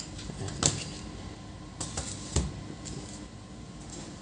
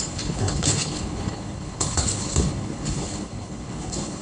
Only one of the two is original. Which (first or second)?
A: first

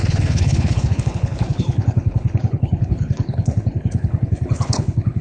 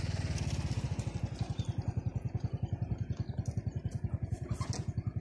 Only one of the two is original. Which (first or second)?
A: second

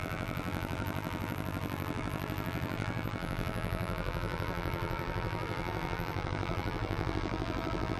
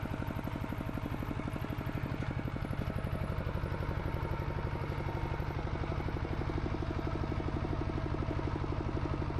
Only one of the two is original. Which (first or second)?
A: second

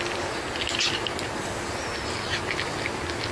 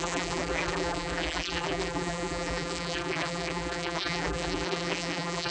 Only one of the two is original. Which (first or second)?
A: first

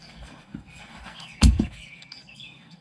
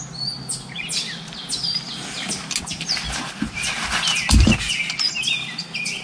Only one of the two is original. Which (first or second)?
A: second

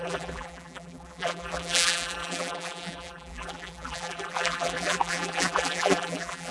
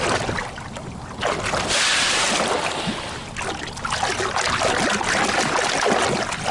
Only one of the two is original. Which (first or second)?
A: second